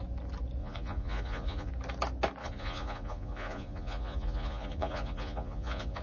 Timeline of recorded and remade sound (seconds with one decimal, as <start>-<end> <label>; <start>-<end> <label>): 0.0-0.6 recorded; 0.6-1.7 remade; 1.7-2.4 recorded; 2.4-6.0 remade